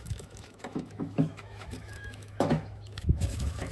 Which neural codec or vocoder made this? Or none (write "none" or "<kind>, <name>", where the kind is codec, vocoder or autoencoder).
autoencoder, DAC-VAE